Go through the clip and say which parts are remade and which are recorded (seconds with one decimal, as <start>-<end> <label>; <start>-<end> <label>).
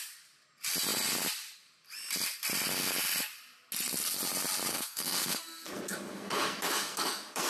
0.0-4.7 recorded; 4.7-7.5 remade